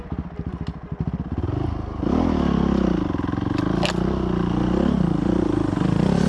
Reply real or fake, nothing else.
real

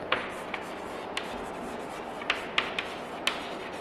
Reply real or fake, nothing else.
real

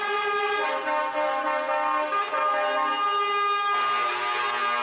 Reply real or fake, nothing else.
real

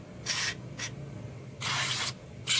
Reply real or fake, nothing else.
real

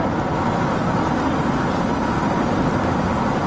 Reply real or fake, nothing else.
real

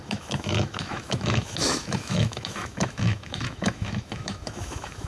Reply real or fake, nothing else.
fake